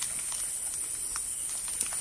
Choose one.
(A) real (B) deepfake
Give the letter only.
A